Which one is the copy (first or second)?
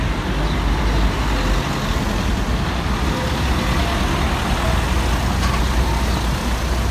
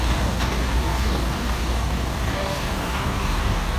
second